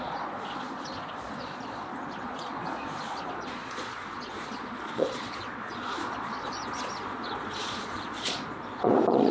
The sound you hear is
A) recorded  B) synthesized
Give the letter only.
B